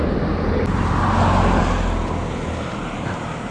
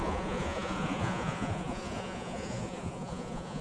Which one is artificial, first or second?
second